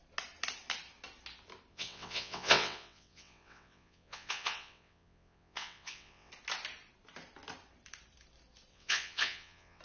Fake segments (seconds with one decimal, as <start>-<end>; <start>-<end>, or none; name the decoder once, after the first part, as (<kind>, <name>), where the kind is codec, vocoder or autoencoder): 1.7-6.3 (vocoder, WaveNeXt); 8.7-9.8